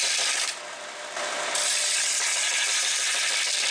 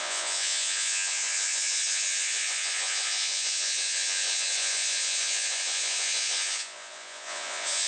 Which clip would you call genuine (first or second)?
first